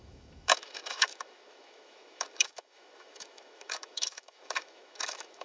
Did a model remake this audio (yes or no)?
yes